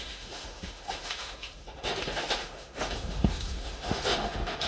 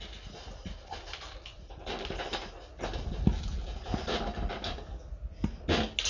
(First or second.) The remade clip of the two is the first